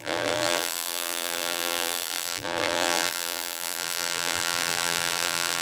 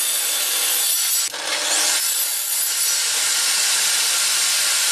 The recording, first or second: second